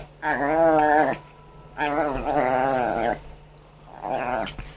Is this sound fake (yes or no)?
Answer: no